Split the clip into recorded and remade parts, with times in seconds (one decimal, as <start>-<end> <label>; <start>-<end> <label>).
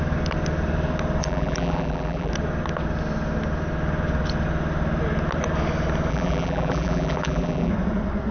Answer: 0.0-1.2 recorded; 1.2-2.3 remade; 2.3-6.1 recorded; 6.1-7.7 remade; 7.7-8.3 recorded